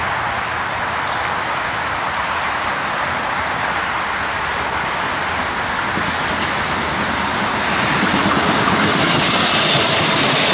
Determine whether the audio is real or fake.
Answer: real